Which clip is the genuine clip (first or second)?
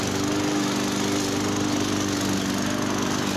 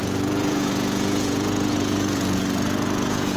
first